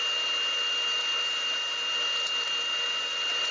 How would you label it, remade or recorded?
recorded